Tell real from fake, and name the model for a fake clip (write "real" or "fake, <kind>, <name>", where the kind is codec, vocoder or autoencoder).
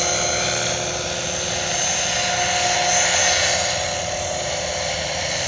real